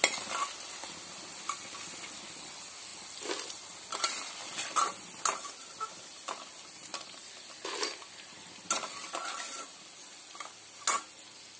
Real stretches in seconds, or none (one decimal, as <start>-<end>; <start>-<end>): 0.0-11.6